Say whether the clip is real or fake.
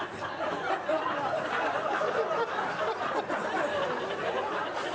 fake